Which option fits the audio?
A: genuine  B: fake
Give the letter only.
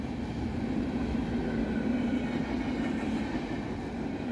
A